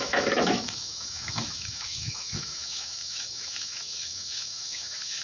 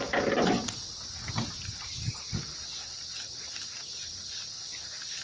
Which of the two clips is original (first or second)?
second